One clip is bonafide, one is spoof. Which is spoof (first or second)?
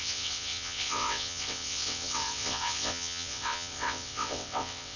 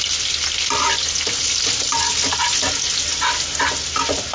first